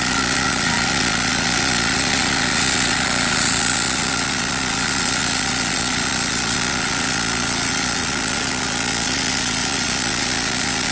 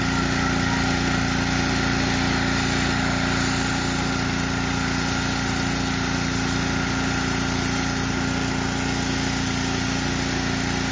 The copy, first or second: first